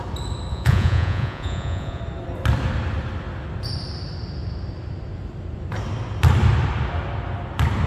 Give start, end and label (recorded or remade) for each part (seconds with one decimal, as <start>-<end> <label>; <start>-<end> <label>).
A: 0.0-0.5 recorded; 0.5-2.0 remade; 2.0-7.9 recorded